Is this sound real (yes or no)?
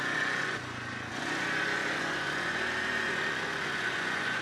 no